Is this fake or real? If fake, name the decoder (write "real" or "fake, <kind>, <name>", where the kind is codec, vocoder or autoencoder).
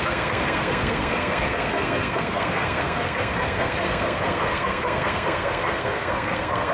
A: fake, codec, SNAC